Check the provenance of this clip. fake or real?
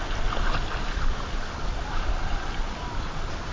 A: real